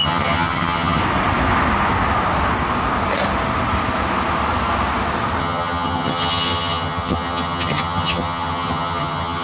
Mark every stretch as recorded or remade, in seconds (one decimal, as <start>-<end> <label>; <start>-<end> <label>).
0.0-1.0 remade; 1.0-5.4 recorded; 5.4-9.4 remade